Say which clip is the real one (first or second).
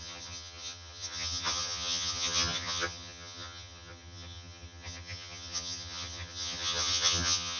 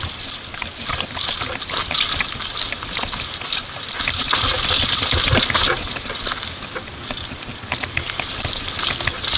second